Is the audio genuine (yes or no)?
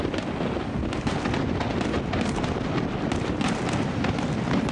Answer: yes